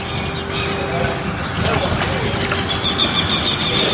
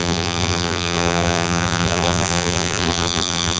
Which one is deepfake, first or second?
second